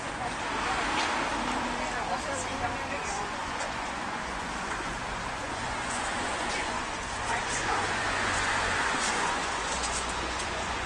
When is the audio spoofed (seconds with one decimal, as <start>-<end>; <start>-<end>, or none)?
0.0-0.4; 2.9-10.9